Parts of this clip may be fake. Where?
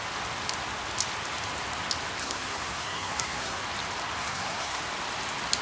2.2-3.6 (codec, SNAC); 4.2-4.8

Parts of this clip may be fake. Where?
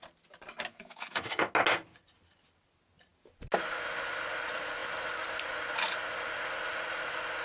0.7-1.5 (autoencoder, DAC-VAE)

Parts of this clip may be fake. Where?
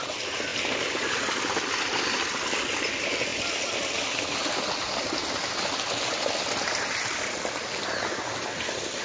none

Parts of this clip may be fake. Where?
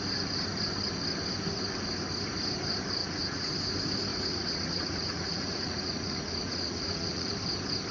3.0-3.5 (vocoder, Vocos); 4.1-7.3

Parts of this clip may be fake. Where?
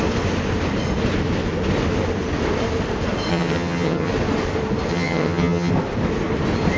3.3-4.1 (vocoder, HiFi-GAN); 4.9-5.7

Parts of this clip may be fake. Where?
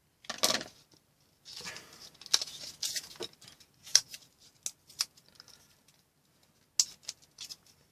3.9-4.4 (vocoder, BigVGAN v2)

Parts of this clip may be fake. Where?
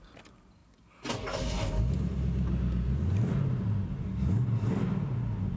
none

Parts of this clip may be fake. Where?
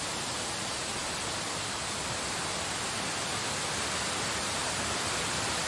none